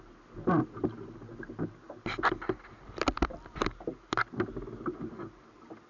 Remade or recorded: recorded